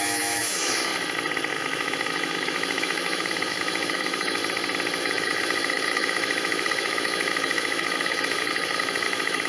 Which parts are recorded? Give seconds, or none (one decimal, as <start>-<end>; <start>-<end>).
0.9-1.5; 4.4-5.0